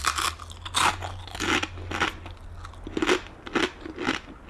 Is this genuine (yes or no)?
yes